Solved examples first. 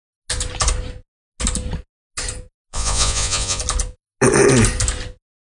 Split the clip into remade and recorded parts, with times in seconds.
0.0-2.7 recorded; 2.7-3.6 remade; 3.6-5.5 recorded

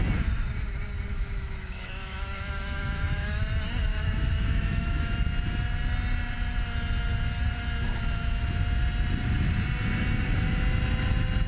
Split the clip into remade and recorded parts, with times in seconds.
0.0-1.1 recorded; 1.1-3.4 remade; 3.4-3.9 recorded; 3.9-5.1 remade; 5.1-11.5 recorded

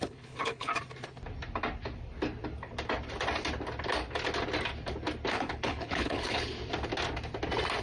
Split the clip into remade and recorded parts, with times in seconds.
0.0-0.7 remade; 0.7-5.3 recorded; 5.3-6.6 remade; 6.6-7.8 recorded